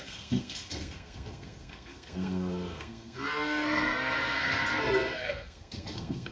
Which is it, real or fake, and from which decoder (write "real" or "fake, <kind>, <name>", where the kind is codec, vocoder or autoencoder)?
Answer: fake, codec, SNAC